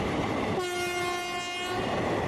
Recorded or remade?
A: recorded